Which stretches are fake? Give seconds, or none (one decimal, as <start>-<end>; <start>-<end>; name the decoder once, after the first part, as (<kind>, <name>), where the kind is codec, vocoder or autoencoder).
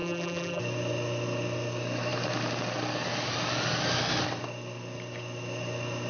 0.0-0.6 (vocoder, BigVGAN v2)